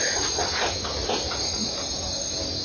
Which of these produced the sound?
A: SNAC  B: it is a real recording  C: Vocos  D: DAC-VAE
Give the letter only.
B